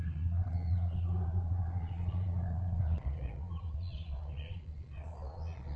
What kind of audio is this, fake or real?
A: fake